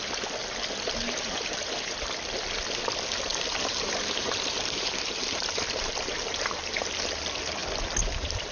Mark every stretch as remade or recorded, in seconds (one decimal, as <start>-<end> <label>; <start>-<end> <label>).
0.0-0.4 recorded; 0.4-2.2 remade; 2.2-3.3 recorded; 3.3-6.7 remade; 6.7-8.5 recorded